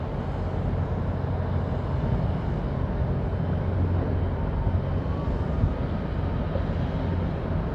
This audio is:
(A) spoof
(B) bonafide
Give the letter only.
B